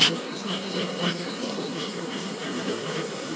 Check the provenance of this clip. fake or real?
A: fake